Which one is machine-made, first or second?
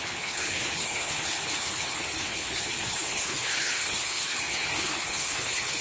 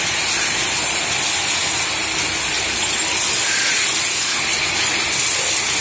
first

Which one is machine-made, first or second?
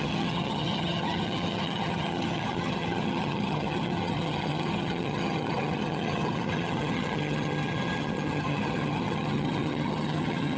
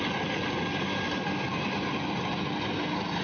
first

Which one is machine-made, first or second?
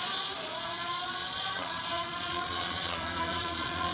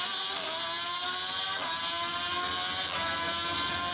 first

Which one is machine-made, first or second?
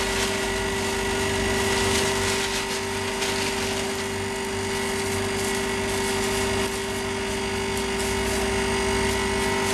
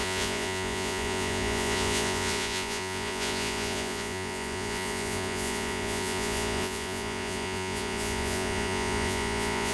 second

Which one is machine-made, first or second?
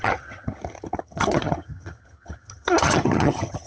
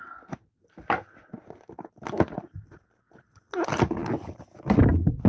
first